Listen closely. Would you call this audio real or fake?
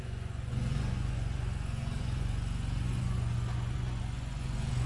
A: fake